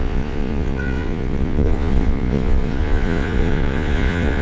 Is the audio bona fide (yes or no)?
no